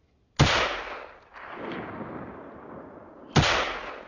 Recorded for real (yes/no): yes